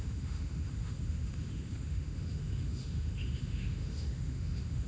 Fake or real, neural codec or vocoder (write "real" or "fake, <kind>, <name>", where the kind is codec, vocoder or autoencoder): fake, autoencoder, DAC-VAE